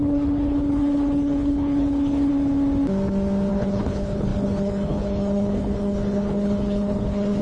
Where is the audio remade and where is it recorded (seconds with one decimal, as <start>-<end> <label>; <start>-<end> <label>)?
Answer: 0.0-2.3 remade; 2.3-3.5 recorded; 3.5-7.4 remade